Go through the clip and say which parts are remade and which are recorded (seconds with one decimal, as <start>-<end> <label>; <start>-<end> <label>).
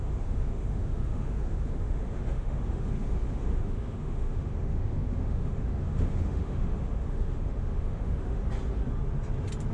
0.0-8.4 remade; 8.4-9.7 recorded